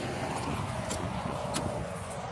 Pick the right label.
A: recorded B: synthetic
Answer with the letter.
B